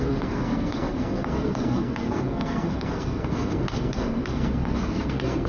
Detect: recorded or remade remade